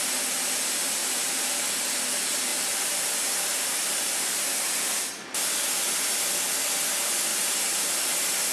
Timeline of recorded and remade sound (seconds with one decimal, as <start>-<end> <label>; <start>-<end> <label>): 0.0-1.0 recorded; 1.0-1.5 remade; 1.5-2.5 recorded; 2.5-5.1 remade; 5.1-7.3 recorded; 7.3-7.9 remade; 7.9-8.5 recorded